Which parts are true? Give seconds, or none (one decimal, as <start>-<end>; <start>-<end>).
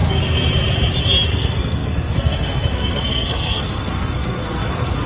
0.0-1.3